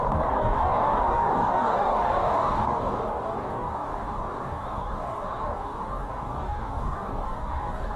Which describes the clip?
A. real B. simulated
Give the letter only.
B